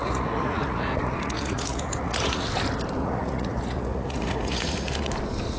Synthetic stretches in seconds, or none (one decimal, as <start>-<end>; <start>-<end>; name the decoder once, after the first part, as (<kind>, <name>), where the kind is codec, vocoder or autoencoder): 0.0-2.5 (vocoder, Vocos); 3.0-5.1

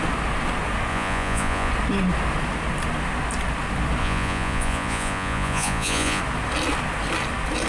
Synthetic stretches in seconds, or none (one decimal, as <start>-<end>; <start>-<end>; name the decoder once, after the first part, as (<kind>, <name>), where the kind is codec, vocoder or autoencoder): 0.9-1.7 (vocoder, Vocos); 4.0-6.2

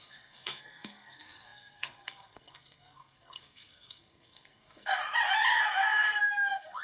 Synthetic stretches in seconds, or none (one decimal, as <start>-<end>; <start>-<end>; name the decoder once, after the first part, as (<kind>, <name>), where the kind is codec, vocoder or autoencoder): 0.0-5.0 (codec, SNAC); 5.5-6.8

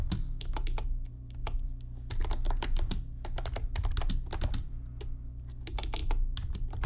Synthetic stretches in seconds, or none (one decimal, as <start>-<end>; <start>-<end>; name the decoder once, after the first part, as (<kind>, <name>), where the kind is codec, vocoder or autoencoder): none